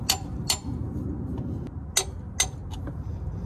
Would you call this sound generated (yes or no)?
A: no